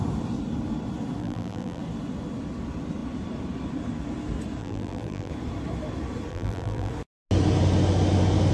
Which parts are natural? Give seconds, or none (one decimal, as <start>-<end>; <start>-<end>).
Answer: 0.0-1.2; 1.8-4.6; 5.3-6.3; 6.9-8.5